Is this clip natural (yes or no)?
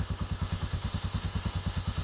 no